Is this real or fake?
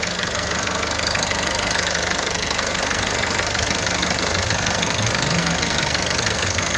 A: fake